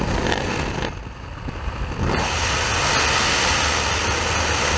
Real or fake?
real